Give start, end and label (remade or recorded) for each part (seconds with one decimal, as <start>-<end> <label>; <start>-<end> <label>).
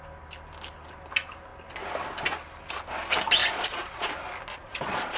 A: 0.0-3.4 recorded; 3.4-4.1 remade; 4.1-4.5 recorded; 4.5-5.2 remade